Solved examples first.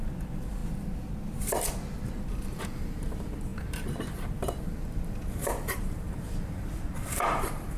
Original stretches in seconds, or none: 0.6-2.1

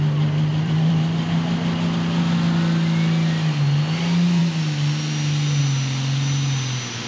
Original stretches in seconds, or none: 0.0-0.5; 1.2-7.1

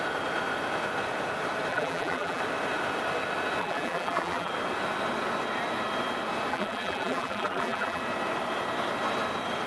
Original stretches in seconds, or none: 0.0-1.7; 2.4-3.6; 4.5-6.5; 8.0-9.7

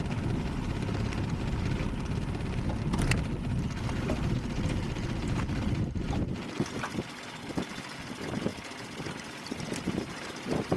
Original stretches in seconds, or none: 0.0-10.8